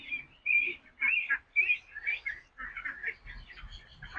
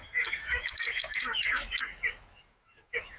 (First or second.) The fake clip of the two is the second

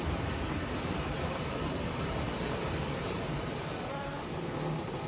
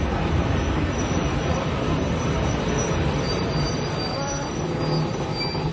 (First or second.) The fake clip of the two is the first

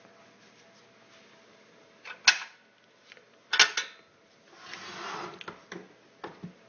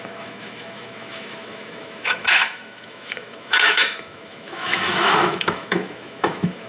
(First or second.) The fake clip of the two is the second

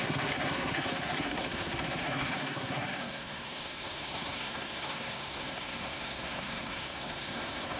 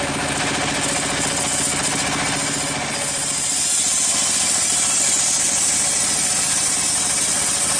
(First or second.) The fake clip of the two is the first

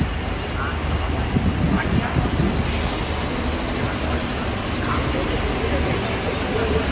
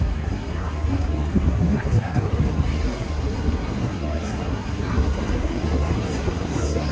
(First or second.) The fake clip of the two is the second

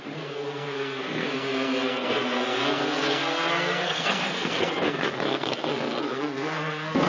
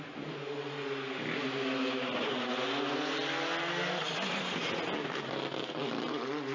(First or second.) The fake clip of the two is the first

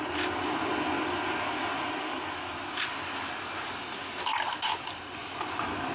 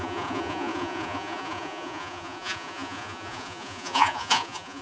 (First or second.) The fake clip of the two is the second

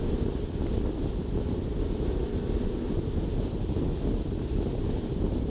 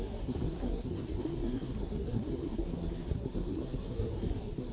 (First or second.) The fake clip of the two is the second